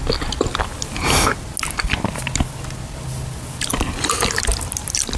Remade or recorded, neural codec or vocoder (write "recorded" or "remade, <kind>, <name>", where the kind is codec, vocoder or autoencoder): recorded